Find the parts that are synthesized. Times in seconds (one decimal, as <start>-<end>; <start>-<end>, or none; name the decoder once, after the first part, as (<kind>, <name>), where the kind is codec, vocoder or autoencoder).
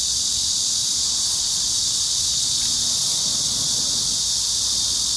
0.8-3.9 (vocoder, Vocos)